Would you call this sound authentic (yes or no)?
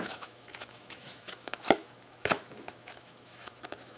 no